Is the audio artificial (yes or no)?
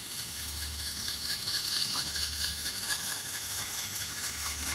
yes